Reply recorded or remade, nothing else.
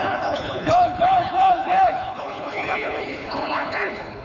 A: remade